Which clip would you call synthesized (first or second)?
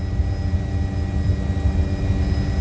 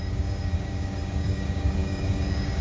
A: second